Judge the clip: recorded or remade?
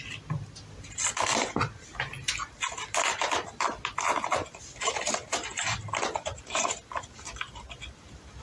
recorded